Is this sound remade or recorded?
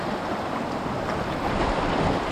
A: recorded